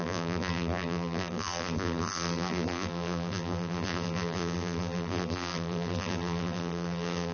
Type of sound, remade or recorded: remade